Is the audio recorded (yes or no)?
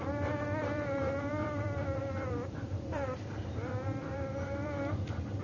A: no